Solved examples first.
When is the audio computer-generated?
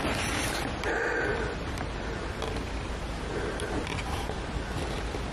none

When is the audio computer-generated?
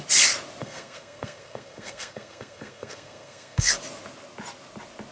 0.6-3.7 (codec, SNAC)